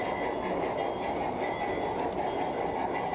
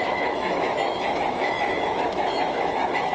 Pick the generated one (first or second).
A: second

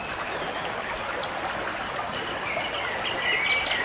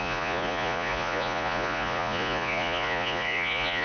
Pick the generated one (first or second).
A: second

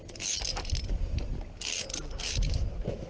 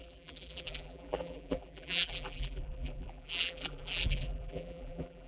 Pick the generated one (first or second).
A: second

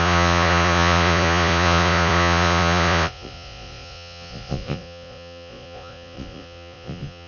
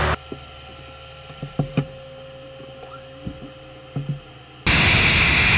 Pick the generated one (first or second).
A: first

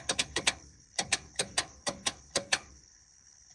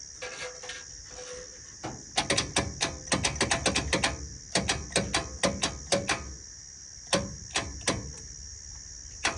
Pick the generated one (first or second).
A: first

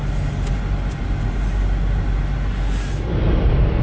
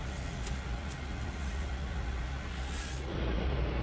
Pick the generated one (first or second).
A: second